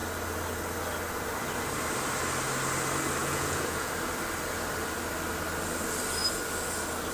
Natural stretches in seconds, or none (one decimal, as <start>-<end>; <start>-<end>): 0.0-3.2; 3.9-7.1